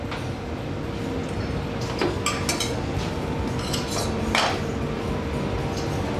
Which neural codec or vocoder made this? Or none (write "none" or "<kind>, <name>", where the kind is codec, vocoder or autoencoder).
none